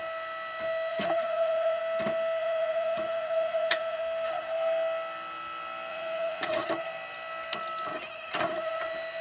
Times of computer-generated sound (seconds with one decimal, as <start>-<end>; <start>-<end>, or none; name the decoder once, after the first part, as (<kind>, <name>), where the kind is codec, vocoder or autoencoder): 0.9-1.8 (vocoder, Vocos); 2.4-4.0; 5.9-6.7